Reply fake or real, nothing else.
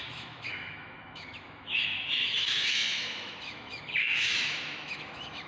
fake